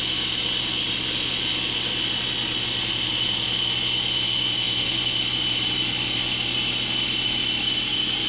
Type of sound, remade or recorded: recorded